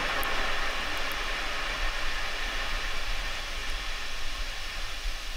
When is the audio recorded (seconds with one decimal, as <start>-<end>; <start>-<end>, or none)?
0.0-5.4